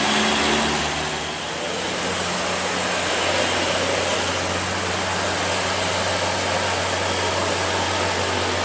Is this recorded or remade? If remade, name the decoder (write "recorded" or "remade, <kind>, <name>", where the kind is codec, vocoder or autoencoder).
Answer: recorded